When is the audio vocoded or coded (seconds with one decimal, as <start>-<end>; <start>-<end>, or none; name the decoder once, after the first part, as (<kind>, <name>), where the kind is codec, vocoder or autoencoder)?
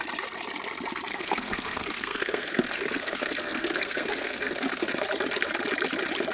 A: 1.1-4.9 (codec, SNAC)